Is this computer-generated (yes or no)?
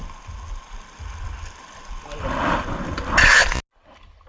no